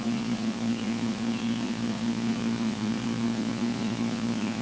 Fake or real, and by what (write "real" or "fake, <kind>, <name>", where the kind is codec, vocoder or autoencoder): fake, vocoder, Vocos